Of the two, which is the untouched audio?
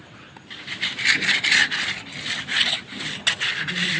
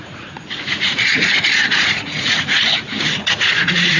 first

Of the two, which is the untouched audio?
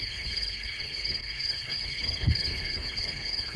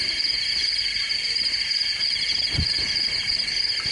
second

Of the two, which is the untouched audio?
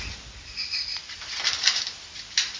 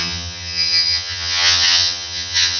first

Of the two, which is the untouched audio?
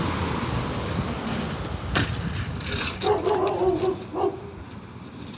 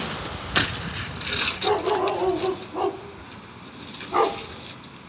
second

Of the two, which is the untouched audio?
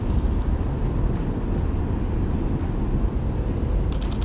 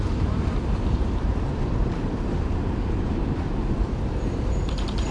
first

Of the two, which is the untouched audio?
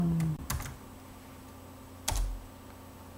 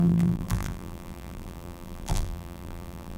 first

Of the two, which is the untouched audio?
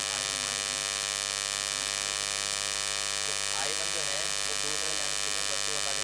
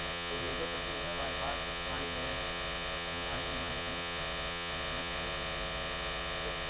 first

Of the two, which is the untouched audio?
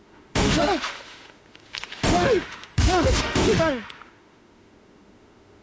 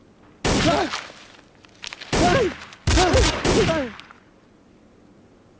second